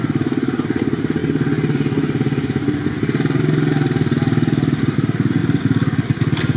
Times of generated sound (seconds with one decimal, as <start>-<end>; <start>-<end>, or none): none